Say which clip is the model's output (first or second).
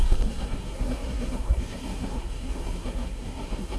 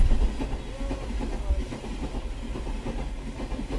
first